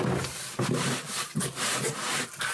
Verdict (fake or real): real